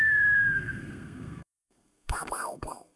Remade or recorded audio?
remade